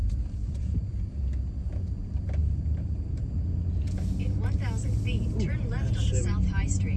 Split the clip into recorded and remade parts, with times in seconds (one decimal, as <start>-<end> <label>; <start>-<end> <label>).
0.0-0.4 recorded; 0.4-0.9 remade; 0.9-2.4 recorded; 2.4-3.3 remade; 3.3-7.0 recorded